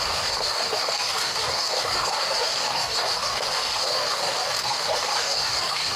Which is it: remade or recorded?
remade